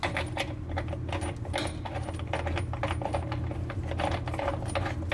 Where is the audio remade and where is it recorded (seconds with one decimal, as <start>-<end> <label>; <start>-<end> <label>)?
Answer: 0.0-5.1 recorded